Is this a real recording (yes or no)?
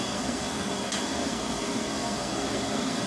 no